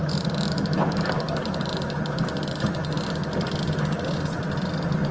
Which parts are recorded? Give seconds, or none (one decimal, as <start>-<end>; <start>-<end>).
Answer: 0.0-5.1